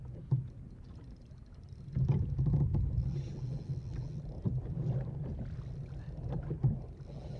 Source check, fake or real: real